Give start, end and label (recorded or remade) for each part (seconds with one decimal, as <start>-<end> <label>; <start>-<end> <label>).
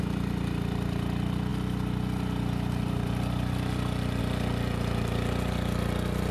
0.0-6.3 recorded